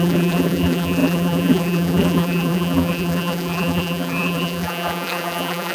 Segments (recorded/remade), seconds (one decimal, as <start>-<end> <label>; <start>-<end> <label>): 0.0-5.7 remade